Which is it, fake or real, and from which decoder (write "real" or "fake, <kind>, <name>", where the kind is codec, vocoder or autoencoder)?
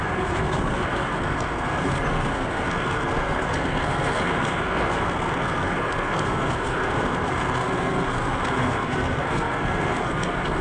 fake, codec, SNAC